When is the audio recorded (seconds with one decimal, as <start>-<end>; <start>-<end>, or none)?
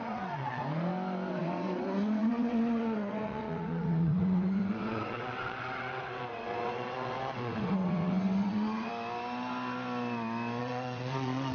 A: 0.6-1.3; 8.9-10.6